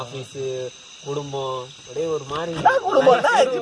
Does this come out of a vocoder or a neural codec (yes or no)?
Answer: no